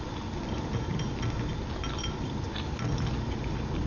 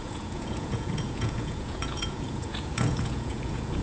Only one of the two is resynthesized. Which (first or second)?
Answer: second